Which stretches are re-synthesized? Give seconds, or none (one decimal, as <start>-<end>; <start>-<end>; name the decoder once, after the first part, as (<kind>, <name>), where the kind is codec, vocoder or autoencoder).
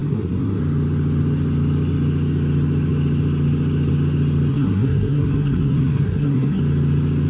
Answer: 0.0-0.6 (codec, SNAC); 4.5-6.6